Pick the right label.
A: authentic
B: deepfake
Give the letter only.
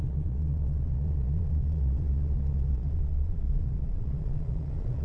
B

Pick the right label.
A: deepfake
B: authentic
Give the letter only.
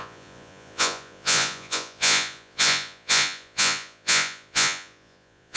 A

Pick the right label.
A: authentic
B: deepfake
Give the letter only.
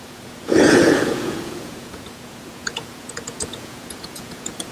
B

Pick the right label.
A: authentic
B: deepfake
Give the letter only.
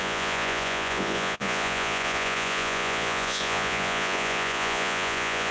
B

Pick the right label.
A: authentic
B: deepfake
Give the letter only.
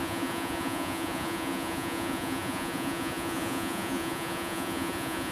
B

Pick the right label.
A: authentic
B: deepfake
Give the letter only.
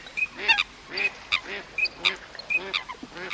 A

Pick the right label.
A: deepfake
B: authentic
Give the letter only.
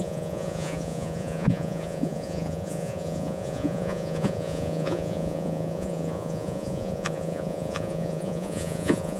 A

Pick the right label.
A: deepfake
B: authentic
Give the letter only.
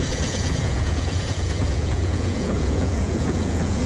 A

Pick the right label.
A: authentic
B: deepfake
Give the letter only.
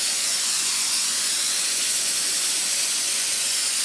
B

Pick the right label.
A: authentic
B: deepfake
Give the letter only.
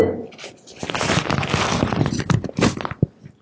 A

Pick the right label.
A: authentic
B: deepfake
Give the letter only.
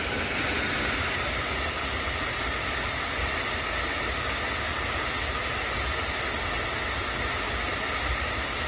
A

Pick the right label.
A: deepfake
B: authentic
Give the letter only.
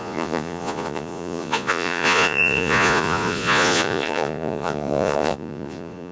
A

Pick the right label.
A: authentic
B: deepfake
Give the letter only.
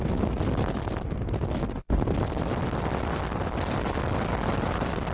A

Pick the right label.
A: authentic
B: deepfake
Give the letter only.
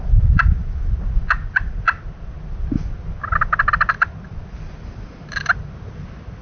A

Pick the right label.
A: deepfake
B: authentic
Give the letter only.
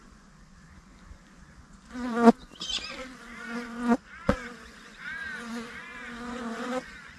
A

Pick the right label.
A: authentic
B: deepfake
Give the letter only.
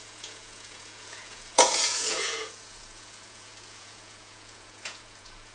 B